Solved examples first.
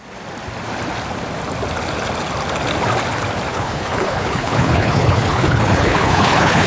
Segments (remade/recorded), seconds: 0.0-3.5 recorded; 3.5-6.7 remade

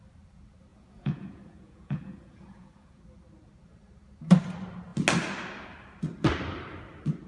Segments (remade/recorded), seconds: 0.0-0.7 recorded; 0.7-3.0 remade; 3.0-7.3 recorded